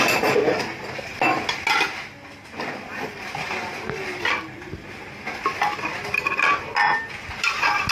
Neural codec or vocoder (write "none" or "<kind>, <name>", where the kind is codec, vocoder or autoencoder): none